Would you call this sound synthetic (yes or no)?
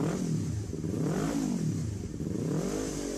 no